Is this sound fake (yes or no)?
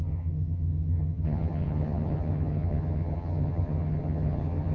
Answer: yes